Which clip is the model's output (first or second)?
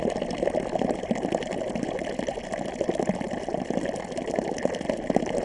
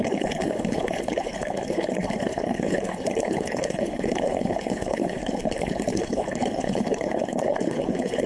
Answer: second